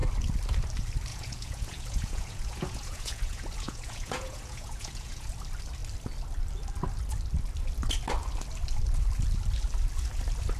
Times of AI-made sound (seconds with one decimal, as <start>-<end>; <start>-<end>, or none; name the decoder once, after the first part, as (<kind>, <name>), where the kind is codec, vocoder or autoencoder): 1.1-5.3 (vocoder, Vocos)